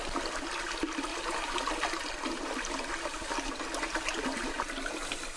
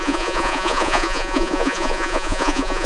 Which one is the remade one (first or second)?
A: second